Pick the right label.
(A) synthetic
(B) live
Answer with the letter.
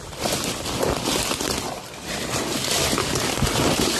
B